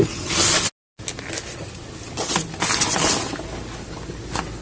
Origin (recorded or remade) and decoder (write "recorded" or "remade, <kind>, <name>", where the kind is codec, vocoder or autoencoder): recorded